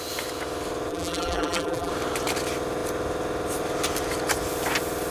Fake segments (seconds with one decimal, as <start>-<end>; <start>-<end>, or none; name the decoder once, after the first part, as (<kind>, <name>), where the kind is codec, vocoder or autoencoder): 0.9-1.9 (vocoder, BigVGAN v2)